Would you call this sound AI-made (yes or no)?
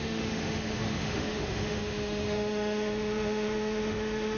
yes